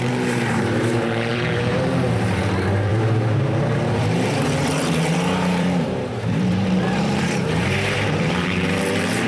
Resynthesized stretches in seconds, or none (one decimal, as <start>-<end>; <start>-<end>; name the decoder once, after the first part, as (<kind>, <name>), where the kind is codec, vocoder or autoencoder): 0.0-9.3 (vocoder, BigVGAN v2)